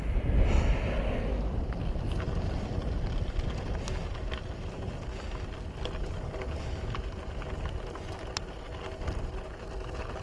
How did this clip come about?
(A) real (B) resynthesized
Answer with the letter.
A